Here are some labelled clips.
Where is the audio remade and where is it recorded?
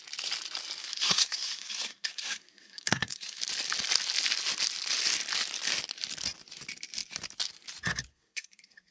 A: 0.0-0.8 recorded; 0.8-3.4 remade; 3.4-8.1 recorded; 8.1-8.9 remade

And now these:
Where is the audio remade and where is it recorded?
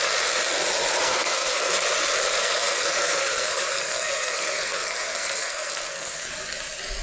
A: 0.0-1.0 recorded; 1.0-1.7 remade; 1.7-2.4 recorded; 2.4-6.3 remade; 6.3-7.0 recorded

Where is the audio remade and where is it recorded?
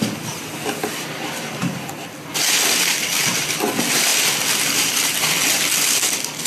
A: 0.0-6.5 recorded